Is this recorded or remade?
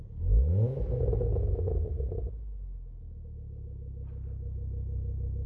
recorded